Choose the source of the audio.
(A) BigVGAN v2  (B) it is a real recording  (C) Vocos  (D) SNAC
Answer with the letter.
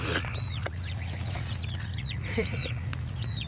C